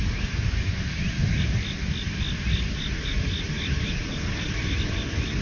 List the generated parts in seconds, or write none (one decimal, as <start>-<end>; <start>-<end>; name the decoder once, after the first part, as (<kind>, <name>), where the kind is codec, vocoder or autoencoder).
none